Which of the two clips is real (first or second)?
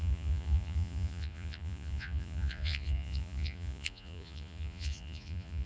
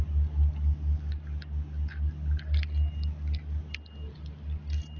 second